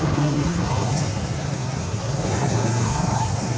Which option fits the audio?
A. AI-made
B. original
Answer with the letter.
A